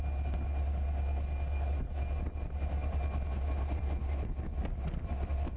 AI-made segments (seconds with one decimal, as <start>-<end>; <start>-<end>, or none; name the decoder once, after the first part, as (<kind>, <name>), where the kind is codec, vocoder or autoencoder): none